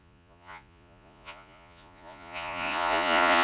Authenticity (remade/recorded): remade